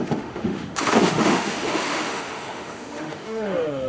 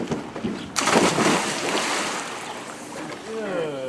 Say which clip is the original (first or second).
second